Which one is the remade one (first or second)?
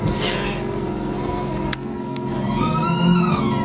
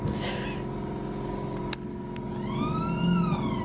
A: first